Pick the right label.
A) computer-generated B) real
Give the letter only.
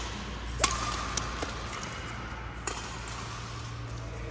B